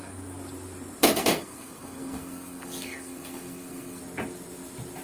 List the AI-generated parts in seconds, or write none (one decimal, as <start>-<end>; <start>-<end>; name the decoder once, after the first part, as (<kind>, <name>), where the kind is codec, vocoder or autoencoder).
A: 1.0-4.0 (codec, SNAC)